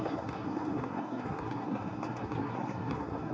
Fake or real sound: fake